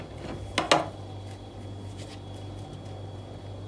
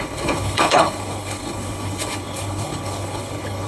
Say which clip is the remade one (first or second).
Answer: second